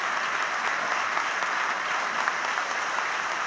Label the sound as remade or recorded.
recorded